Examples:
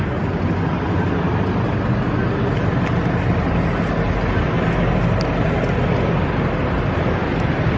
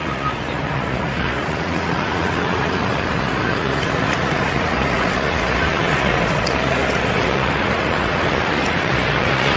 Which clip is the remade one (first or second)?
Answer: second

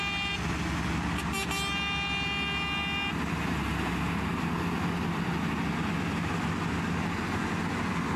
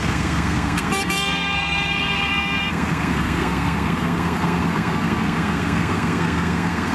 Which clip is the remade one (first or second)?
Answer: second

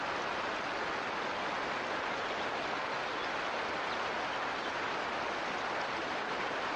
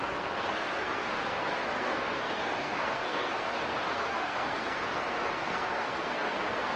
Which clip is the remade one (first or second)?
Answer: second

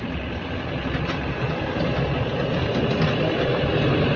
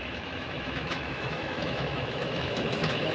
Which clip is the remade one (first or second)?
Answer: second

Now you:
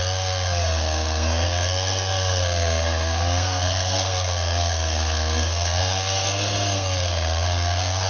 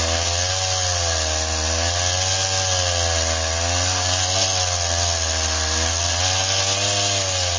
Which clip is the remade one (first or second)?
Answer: first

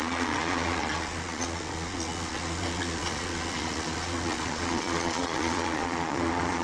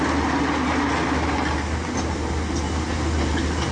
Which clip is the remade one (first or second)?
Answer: first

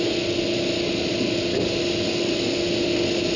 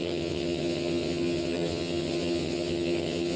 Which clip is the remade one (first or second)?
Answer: second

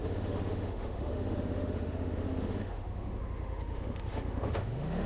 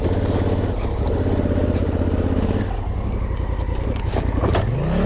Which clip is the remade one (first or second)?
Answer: first